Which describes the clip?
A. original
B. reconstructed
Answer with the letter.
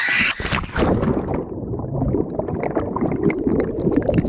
A